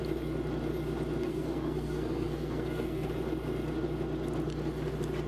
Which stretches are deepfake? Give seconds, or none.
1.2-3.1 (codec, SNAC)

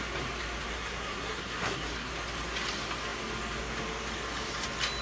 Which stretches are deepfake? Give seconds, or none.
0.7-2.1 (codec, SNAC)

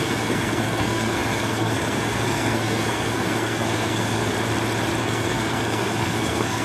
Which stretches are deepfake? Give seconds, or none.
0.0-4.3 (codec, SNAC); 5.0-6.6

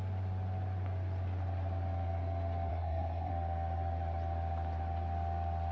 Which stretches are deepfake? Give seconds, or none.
2.7-3.3 (codec, SNAC)

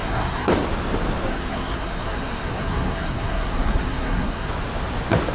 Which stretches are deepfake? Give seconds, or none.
0.0-0.5 (codec, SNAC); 1.3-4.5